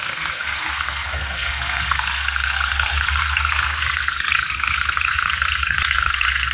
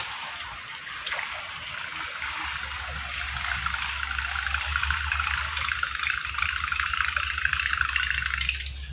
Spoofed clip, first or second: first